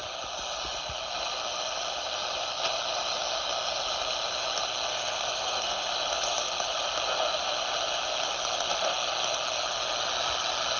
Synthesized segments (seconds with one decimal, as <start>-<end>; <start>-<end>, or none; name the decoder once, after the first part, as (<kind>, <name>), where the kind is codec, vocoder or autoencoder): 4.9-5.8 (codec, SNAC)